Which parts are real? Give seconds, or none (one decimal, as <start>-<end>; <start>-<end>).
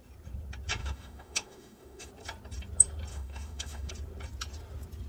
0.0-0.8; 2.1-3.1; 3.9-5.1